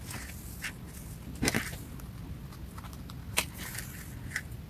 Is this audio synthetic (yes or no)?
no